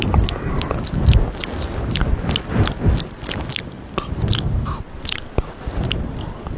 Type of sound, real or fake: real